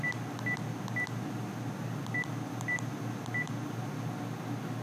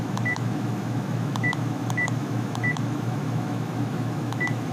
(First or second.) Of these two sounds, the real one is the first